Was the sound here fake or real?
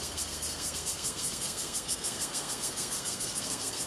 fake